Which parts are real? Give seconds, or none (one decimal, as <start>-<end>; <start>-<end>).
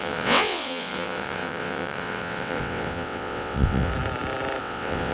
3.9-4.6